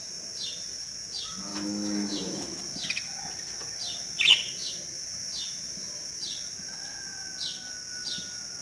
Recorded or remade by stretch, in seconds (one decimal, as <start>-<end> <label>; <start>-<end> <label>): 0.0-1.5 recorded; 1.5-2.6 remade; 2.6-8.6 recorded